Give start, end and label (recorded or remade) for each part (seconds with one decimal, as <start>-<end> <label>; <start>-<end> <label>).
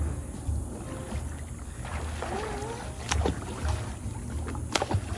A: 0.0-5.2 recorded